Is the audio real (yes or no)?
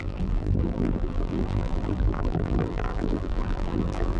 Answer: no